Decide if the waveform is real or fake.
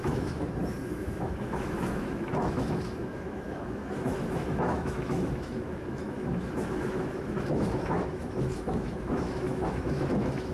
fake